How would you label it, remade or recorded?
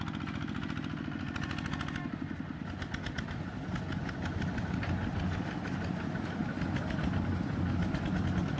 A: recorded